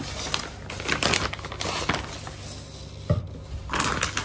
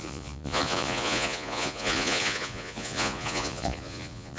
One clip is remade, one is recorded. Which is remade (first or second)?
second